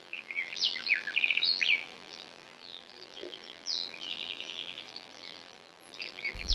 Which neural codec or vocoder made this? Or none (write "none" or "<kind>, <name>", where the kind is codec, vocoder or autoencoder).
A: vocoder, BigVGAN v2